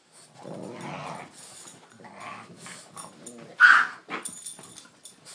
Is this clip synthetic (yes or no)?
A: no